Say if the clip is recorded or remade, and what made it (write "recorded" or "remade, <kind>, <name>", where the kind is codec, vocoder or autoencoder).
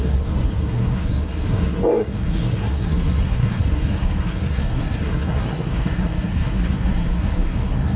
remade, codec, SNAC